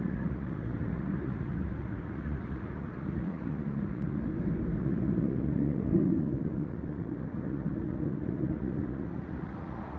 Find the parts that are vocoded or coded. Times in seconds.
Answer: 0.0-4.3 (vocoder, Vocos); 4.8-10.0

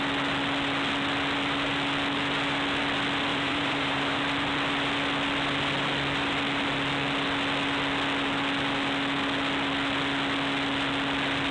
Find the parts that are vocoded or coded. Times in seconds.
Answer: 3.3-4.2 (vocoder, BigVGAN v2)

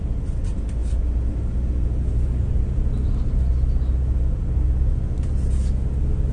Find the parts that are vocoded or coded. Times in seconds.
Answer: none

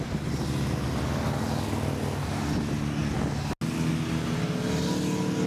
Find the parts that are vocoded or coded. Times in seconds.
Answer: none

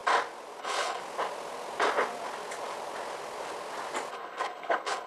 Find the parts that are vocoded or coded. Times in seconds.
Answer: 0.6-1.0 (codec, HILCodec); 4.1-5.1

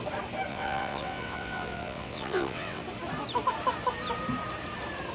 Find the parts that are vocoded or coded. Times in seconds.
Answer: 0.5-2.8 (vocoder, WaveNeXt)